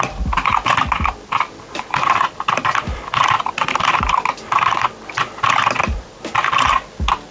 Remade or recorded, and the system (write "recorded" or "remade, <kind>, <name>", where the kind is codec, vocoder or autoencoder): remade, vocoder, BigVGAN v2